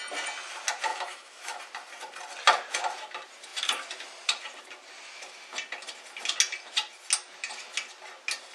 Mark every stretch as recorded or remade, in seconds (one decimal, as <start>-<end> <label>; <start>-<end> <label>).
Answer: 0.0-0.9 recorded; 0.9-1.6 remade; 1.6-8.5 recorded